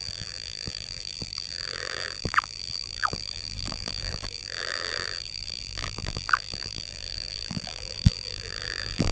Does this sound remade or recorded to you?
remade